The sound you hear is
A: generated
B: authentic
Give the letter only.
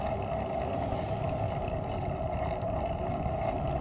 B